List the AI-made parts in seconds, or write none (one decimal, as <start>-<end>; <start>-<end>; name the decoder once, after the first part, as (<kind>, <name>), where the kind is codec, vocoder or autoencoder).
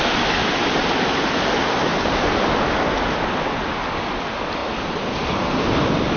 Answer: 1.9-2.5 (vocoder, BigVGAN v2)